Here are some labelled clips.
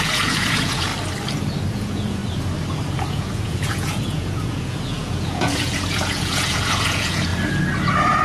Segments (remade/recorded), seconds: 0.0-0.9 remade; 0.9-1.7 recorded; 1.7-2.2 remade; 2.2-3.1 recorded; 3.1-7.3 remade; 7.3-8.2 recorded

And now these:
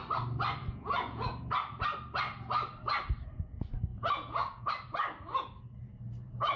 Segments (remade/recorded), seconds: 0.0-0.6 recorded; 0.6-1.2 remade; 1.2-3.9 recorded; 3.9-4.7 remade; 4.7-6.6 recorded

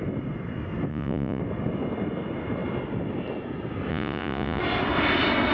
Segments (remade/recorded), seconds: 0.0-0.9 recorded; 0.9-1.4 remade; 1.4-3.9 recorded; 3.9-4.6 remade; 4.6-5.5 recorded

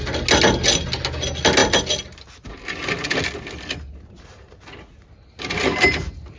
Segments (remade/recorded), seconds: 0.0-6.4 recorded

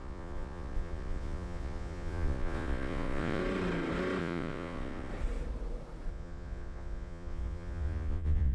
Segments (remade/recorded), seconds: 0.0-3.4 remade; 3.4-4.2 recorded; 4.2-5.1 remade; 5.1-6.1 recorded; 6.1-8.5 remade